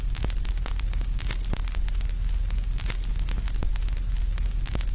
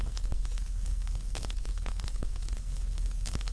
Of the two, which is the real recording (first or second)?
first